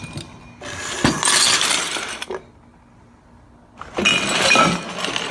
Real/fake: real